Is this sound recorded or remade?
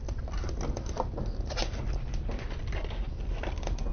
recorded